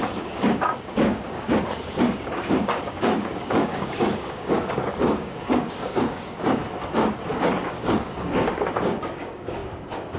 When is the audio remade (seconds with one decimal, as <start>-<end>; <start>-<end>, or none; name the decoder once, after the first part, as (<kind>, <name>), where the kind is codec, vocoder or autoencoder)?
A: 0.0-6.6 (codec, DAC); 7.3-10.2